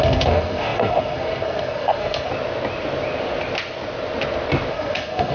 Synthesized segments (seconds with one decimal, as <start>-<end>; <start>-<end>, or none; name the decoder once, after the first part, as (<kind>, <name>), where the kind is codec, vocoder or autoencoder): 0.0-2.3 (codec, SNAC); 4.7-5.3